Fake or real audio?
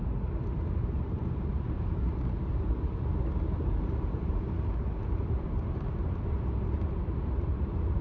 fake